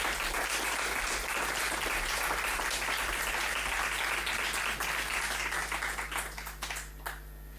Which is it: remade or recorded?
recorded